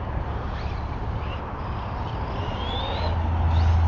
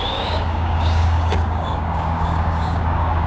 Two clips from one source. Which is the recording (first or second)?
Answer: first